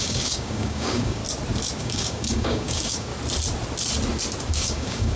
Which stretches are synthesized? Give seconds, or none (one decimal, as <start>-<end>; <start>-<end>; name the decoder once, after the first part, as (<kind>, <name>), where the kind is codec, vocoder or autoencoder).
0.0-1.2 (codec, DAC); 1.8-3.1; 4.5-5.2